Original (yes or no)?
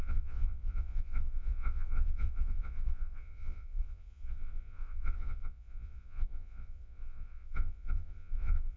no